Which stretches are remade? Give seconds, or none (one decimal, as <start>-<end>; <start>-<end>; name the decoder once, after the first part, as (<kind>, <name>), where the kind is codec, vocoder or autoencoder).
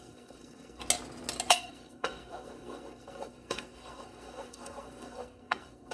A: 0.0-0.8 (codec, SNAC); 1.5-5.9